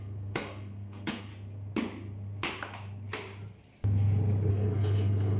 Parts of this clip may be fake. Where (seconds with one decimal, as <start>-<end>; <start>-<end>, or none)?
0.0-1.3; 4.5-5.4